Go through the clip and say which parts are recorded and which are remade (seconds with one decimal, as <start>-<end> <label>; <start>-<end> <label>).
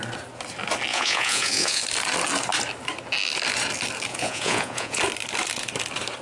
0.0-0.9 recorded; 0.9-1.8 remade; 1.8-4.1 recorded; 4.1-5.0 remade; 5.0-6.2 recorded